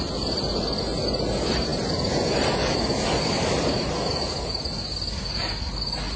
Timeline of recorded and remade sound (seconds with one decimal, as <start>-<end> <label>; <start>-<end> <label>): 0.0-6.2 recorded